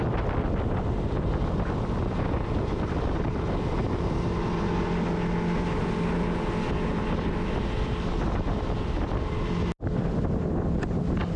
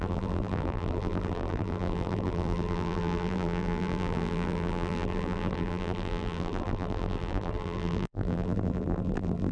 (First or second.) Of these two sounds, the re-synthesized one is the second